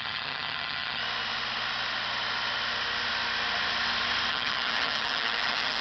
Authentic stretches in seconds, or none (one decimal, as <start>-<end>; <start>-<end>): 1.0-4.3